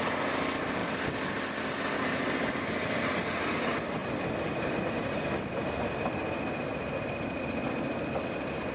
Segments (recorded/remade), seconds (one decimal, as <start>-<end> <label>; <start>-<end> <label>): 0.0-8.7 recorded